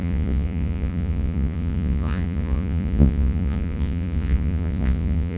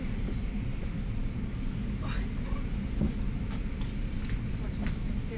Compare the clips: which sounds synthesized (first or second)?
first